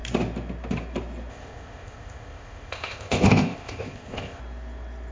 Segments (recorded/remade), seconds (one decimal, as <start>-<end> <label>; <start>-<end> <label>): 0.0-1.3 recorded; 1.3-4.4 remade; 4.4-5.1 recorded